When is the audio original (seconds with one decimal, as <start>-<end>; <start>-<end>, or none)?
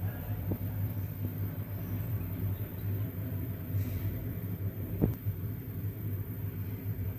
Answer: 1.3-2.0